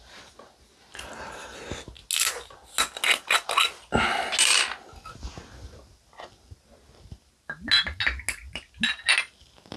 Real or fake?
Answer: real